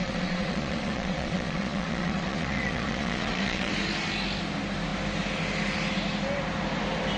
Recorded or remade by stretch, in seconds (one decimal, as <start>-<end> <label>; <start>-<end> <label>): 0.0-3.7 remade; 3.7-7.2 recorded